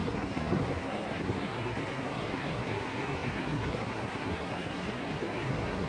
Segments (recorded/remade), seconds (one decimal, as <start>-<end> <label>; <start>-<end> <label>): 0.0-5.9 remade